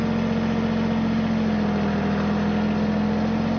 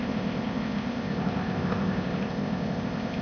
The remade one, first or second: second